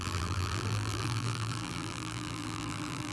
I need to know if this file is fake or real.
fake